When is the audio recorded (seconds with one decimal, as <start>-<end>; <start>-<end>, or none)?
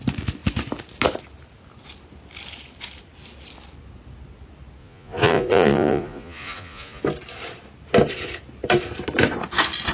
0.0-4.8; 7.0-9.9